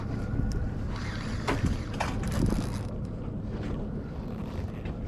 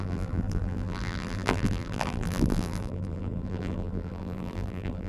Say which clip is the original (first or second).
first